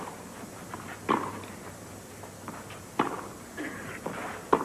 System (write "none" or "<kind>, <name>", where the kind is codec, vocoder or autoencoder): none